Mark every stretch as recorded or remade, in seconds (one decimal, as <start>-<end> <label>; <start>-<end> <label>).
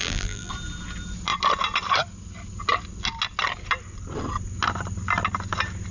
0.0-0.5 remade; 0.5-5.9 recorded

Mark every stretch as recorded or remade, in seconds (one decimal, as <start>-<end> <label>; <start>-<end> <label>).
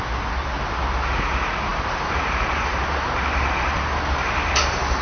0.0-1.7 recorded; 1.7-5.0 remade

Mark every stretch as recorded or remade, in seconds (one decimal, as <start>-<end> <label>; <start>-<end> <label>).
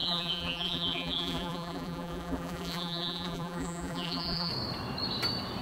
0.0-4.5 remade; 4.5-5.6 recorded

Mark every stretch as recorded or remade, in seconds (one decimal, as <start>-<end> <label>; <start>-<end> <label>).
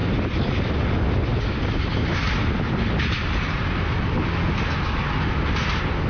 0.0-1.3 recorded; 1.3-4.0 remade; 4.0-6.1 recorded